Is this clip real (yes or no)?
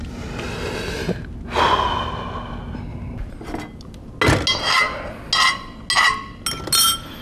yes